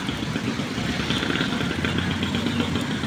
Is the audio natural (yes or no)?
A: yes